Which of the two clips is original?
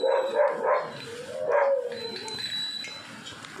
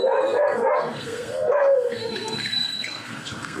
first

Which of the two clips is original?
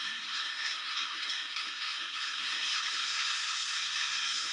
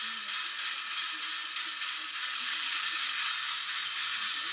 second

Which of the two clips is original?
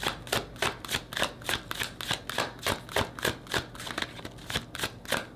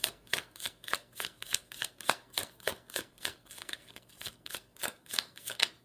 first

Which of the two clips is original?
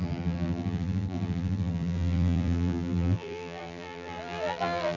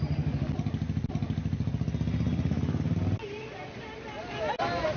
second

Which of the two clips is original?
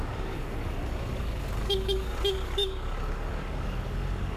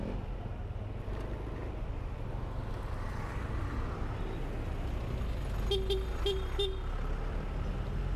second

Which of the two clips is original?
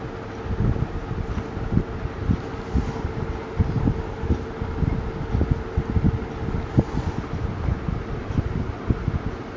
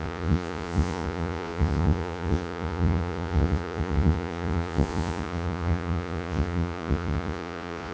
first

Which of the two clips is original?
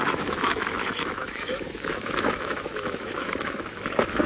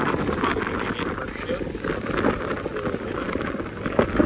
second